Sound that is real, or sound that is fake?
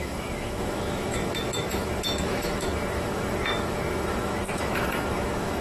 fake